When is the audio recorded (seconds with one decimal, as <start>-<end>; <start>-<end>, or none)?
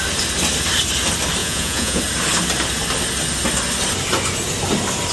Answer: 0.0-1.4; 2.0-5.1